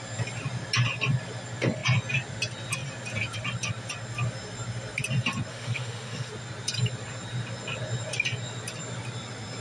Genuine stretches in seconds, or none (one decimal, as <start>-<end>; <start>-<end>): 0.0-5.5; 6.3-9.6

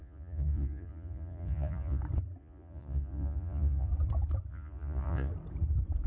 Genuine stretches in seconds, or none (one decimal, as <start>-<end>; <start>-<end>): 2.0-2.4; 3.9-4.5; 5.3-6.1

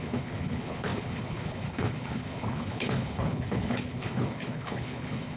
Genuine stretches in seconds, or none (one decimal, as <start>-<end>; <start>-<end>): none

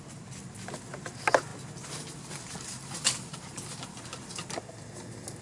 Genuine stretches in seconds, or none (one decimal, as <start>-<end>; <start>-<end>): 0.0-5.4